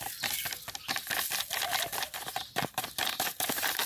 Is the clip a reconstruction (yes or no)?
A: no